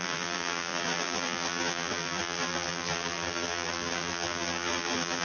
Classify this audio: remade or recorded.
remade